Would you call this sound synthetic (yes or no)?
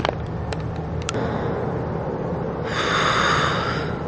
yes